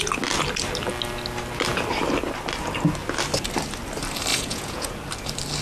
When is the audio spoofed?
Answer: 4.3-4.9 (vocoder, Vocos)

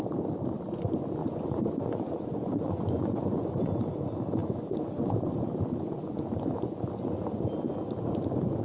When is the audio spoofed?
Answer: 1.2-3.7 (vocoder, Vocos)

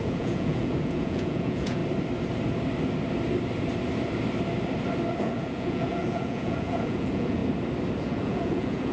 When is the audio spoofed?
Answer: 0.0-1.8 (vocoder, Vocos); 5.2-7.4; 8.0-8.9